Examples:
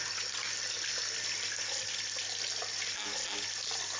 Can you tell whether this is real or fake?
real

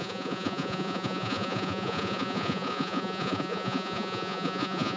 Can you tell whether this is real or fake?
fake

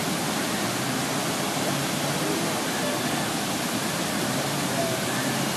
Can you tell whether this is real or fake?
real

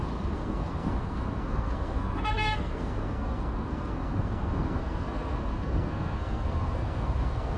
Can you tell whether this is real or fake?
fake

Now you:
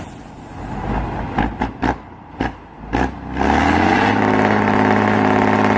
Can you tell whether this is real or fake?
real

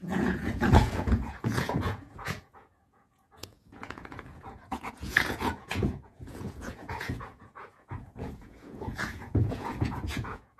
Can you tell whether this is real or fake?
fake